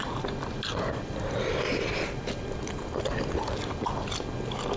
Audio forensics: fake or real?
real